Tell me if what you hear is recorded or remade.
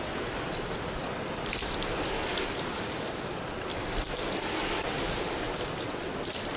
recorded